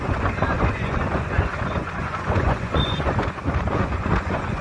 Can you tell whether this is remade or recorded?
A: remade